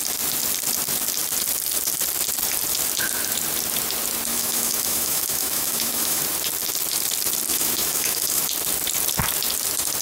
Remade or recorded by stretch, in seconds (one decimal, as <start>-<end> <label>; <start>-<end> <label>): 0.0-4.3 recorded; 4.3-6.2 remade; 6.2-7.5 recorded; 7.5-8.4 remade; 8.4-10.0 recorded